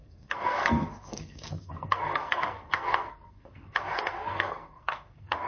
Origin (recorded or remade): remade